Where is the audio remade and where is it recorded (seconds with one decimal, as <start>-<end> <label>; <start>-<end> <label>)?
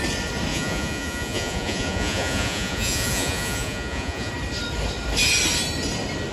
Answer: 0.0-0.5 recorded; 0.5-4.3 remade; 4.3-6.3 recorded